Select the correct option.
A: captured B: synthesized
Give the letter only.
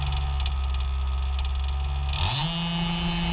A